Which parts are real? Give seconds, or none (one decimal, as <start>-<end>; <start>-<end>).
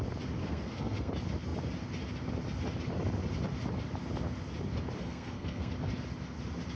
0.0-0.4; 1.1-5.0; 5.7-6.8